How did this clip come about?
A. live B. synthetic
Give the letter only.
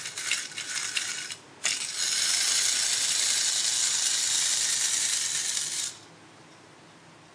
A